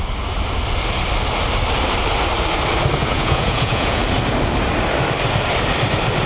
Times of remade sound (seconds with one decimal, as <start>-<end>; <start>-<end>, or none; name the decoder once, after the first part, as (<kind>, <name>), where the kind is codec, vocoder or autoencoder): 3.0-4.0 (vocoder, Vocos)